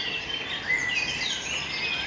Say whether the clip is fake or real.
real